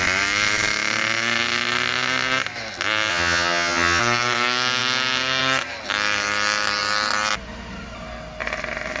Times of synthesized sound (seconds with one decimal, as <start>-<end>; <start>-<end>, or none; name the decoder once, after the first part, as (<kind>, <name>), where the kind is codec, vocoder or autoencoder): 3.1-4.0 (vocoder, HiFi-GAN)